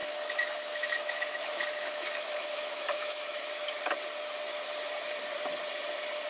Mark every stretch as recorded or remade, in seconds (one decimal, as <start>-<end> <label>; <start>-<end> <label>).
0.0-3.8 remade; 3.8-6.3 recorded

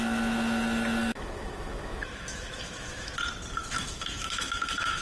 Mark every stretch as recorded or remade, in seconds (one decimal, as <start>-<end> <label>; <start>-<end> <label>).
0.0-1.0 recorded; 1.0-3.1 remade; 3.1-3.6 recorded; 3.6-5.0 remade